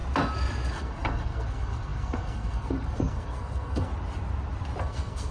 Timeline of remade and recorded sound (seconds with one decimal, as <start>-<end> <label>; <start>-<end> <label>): 0.0-0.7 recorded; 0.7-3.9 remade; 3.9-4.8 recorded; 4.8-5.3 remade